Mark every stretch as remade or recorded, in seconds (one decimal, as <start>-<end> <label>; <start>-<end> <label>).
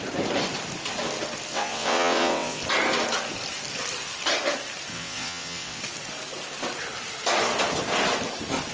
0.0-1.5 recorded; 1.5-2.6 remade; 2.6-4.9 recorded; 4.9-5.8 remade; 5.8-8.7 recorded